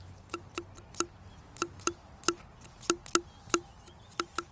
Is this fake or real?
real